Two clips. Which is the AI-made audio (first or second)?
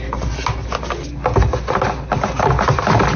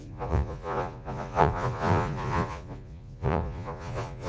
second